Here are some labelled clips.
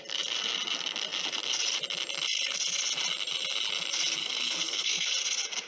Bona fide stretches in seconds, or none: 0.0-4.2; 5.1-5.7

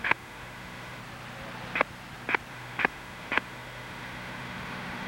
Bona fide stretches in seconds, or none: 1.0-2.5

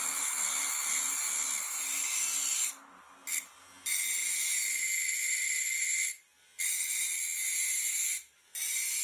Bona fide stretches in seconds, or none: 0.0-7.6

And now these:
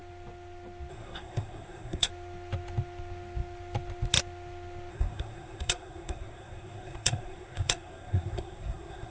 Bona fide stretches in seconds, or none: 0.0-0.9; 2.1-4.9

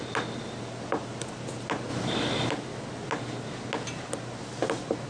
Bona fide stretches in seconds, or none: 0.0-1.9; 2.5-5.1